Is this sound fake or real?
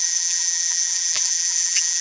fake